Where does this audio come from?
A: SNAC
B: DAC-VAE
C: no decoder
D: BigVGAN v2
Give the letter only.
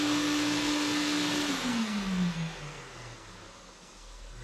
A